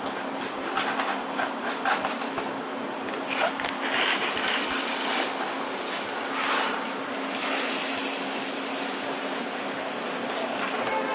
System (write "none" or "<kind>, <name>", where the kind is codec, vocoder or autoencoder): none